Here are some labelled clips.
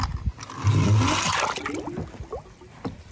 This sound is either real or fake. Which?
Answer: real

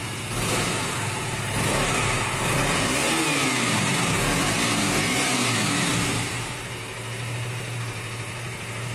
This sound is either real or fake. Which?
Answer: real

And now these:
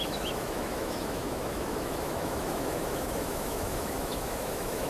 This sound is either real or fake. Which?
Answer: fake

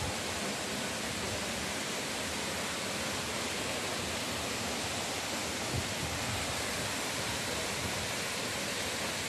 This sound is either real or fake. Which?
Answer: real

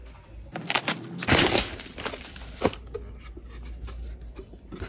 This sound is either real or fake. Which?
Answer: real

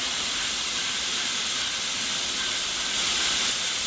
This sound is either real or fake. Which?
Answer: real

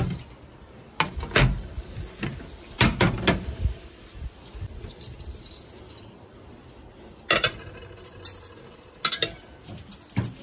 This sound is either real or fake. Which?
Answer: real